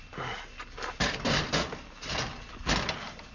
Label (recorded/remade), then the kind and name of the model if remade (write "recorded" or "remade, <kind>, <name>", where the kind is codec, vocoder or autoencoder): recorded